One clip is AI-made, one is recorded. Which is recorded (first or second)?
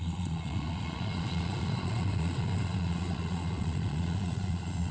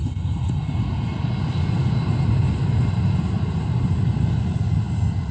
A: second